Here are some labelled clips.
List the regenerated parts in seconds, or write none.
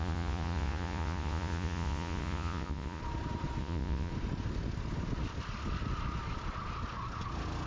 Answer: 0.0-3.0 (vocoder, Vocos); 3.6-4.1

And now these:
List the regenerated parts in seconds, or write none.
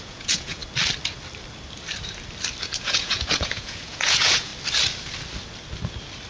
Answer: 0.0-0.6 (vocoder, Vocos); 2.8-4.5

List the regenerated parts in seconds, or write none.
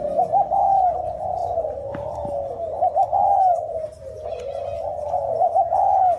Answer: 0.0-1.4 (vocoder, Vocos); 5.1-6.2